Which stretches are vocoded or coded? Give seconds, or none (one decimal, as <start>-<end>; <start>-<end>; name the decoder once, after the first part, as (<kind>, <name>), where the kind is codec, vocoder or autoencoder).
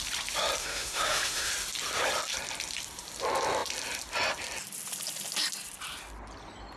0.6-1.5 (autoencoder, DAC-VAE)